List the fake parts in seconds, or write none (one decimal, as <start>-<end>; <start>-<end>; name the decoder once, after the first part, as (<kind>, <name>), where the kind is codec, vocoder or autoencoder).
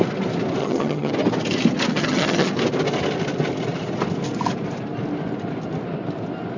0.6-1.1 (vocoder, HiFi-GAN); 1.9-2.5